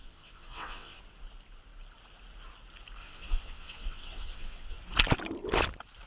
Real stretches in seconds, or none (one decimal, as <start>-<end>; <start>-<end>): 1.0-3.0; 4.8-6.1

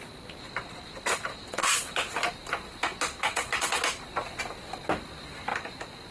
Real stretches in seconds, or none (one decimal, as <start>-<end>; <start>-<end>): 0.0-1.3; 2.1-3.2; 3.8-6.1